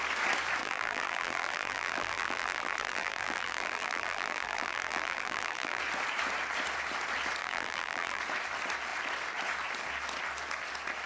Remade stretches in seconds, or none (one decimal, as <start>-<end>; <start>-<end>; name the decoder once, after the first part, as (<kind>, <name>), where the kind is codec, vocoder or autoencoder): 0.6-5.8 (vocoder, BigVGAN v2); 7.4-8.2